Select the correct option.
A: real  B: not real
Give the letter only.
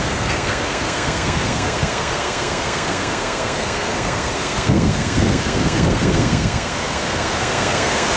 B